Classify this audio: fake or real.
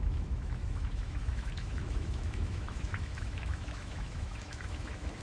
fake